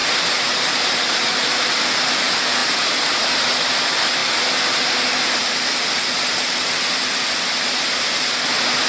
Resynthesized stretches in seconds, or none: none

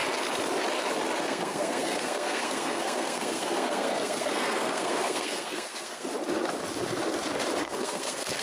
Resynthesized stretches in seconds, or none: 1.2-6.1; 7.6-8.4

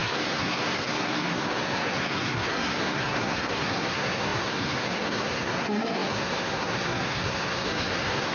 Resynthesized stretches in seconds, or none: 0.0-8.3

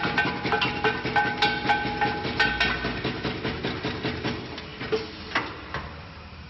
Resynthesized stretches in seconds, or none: none

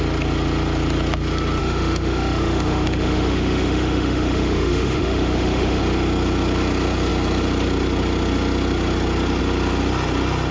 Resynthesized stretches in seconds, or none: 1.6-5.8

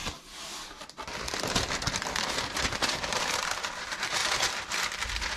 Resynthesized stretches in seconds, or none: 3.2-4.2